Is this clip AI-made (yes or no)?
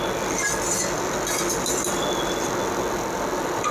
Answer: no